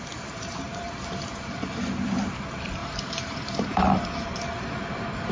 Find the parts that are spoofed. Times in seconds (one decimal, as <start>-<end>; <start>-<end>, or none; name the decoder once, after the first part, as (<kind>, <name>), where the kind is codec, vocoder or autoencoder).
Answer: 0.0-5.3 (vocoder, BigVGAN v2)